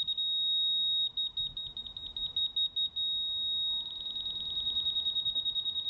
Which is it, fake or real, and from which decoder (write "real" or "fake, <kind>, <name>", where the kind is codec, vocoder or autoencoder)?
real